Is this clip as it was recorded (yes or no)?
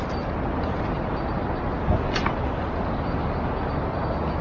yes